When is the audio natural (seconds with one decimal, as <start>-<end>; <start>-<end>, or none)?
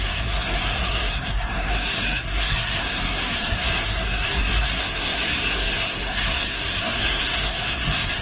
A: none